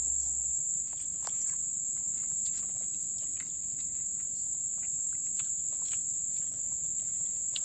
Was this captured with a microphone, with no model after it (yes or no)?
yes